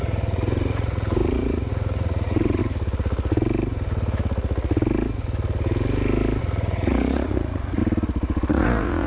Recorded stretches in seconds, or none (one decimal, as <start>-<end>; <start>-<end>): 2.6-6.4; 7.8-8.5